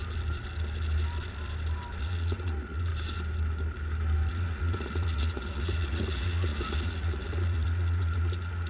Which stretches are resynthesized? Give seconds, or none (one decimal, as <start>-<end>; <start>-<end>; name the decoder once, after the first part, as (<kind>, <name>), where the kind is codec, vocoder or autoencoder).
2.0-2.9 (vocoder, Vocos); 4.3-8.7